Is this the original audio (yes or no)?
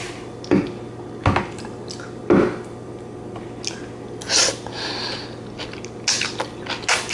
yes